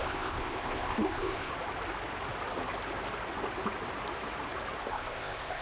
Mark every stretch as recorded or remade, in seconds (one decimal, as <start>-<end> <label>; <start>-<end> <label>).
0.0-1.5 remade; 1.5-4.9 recorded; 4.9-5.6 remade

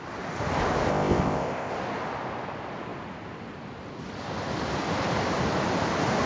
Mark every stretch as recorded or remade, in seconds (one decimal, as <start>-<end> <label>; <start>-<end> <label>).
0.0-0.9 recorded; 0.9-1.7 remade; 1.7-6.3 recorded